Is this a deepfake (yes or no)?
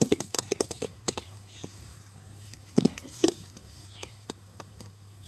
yes